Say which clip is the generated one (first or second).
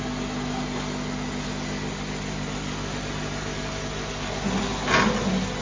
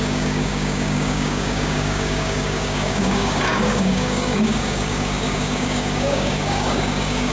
second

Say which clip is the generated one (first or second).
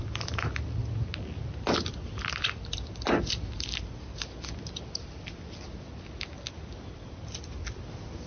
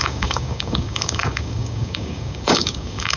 second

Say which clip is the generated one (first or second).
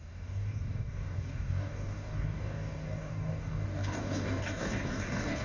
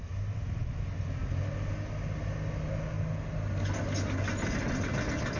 first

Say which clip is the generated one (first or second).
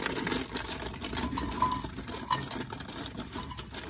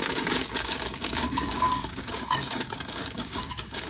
second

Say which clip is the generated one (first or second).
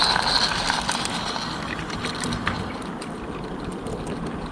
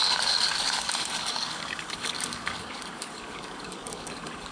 second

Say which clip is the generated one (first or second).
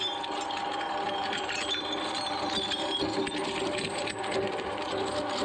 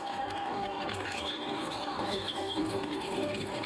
second